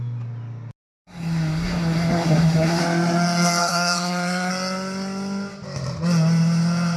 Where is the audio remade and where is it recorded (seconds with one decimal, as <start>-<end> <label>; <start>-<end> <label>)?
0.0-0.9 recorded; 0.9-2.8 remade; 2.8-3.6 recorded; 3.6-4.5 remade; 4.5-7.0 recorded